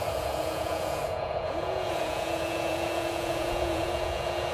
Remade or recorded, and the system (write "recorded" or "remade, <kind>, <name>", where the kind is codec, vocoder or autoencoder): remade, vocoder, Vocos